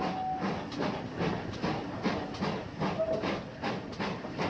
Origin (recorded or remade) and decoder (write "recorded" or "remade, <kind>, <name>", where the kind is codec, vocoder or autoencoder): recorded